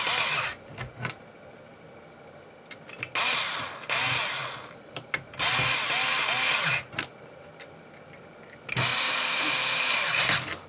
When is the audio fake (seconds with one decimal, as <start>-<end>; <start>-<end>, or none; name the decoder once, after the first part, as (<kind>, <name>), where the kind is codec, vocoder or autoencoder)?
4.4-5.4 (vocoder, BigVGAN v2); 8.9-9.6